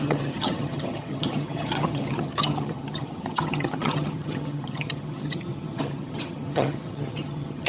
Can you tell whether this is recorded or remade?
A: remade